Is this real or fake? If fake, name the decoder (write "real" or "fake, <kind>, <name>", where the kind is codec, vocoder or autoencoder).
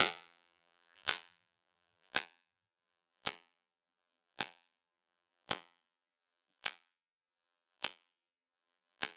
fake, vocoder, BigVGAN v2